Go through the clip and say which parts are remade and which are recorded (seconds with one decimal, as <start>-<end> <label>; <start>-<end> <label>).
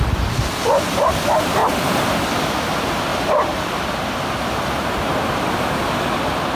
0.0-3.1 recorded; 3.1-5.6 remade; 5.6-6.5 recorded